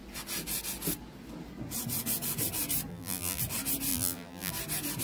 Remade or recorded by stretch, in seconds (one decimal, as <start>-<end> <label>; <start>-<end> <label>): 0.0-2.9 recorded; 2.9-3.4 remade; 3.4-3.9 recorded; 3.9-4.5 remade; 4.5-5.0 recorded